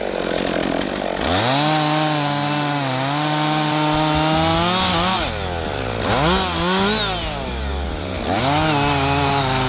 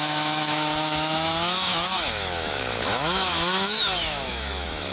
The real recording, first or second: first